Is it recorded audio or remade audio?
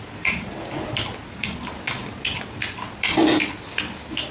recorded